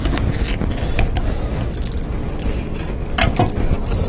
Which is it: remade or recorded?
recorded